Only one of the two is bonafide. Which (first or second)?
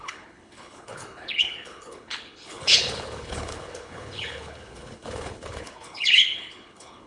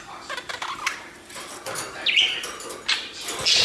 second